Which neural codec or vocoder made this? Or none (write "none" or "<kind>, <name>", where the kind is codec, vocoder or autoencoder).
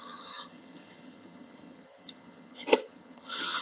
vocoder, HiFi-GAN